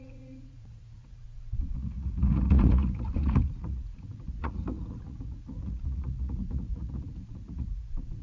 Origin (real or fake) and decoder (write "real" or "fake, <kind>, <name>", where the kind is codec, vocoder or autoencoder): fake, vocoder, Vocos